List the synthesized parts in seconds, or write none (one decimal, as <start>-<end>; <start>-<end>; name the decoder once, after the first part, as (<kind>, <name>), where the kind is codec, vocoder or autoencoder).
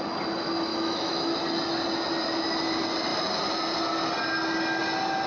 0.7-1.3 (autoencoder, DAC-VAE)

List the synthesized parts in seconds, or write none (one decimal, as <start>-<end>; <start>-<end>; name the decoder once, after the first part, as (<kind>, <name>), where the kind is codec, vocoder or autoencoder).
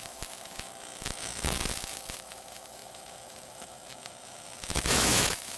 0.0-5.6 (autoencoder, DAC-VAE)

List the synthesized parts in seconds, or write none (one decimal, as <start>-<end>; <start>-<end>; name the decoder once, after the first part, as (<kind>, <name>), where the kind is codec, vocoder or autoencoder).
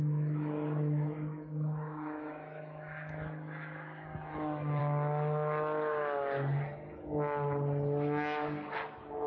0.0-4.8 (autoencoder, DAC-VAE); 8.9-9.3